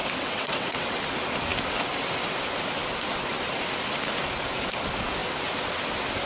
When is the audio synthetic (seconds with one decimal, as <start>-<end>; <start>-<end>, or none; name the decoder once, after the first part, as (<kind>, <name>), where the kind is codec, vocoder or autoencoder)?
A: 0.0-0.8 (vocoder, WaveNeXt)